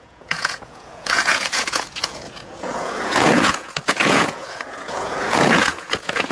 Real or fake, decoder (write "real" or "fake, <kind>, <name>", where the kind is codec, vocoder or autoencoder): fake, vocoder, Vocos